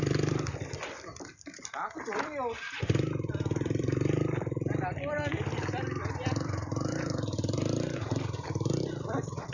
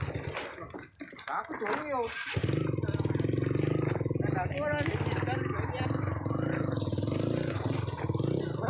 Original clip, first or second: second